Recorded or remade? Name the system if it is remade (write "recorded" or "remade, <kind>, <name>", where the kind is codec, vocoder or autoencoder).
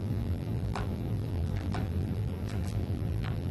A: remade, vocoder, BigVGAN v2